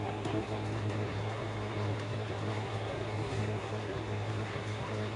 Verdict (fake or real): fake